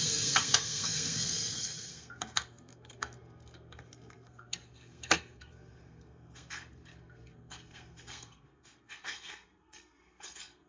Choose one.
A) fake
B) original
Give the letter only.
A